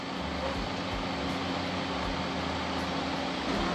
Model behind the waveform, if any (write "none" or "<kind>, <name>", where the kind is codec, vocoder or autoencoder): none